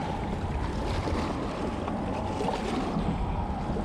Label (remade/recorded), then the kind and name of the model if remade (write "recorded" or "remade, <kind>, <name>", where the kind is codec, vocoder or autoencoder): recorded